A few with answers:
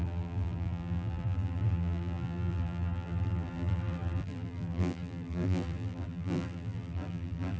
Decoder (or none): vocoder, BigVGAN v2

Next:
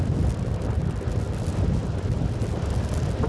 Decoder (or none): none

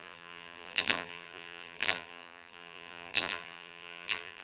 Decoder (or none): vocoder, BigVGAN v2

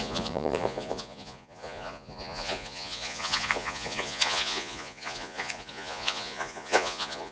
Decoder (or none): vocoder, Vocos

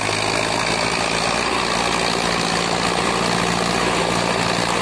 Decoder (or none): none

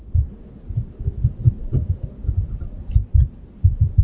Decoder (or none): none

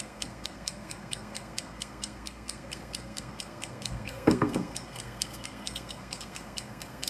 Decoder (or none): codec, SNAC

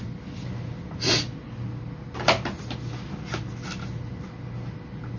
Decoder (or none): none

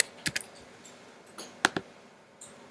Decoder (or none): none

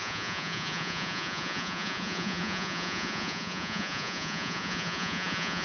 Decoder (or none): vocoder, Vocos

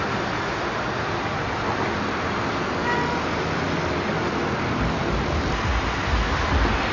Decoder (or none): none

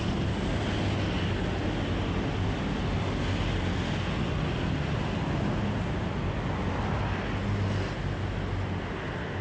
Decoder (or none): none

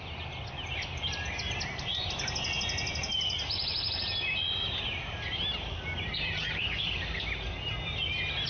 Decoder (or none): none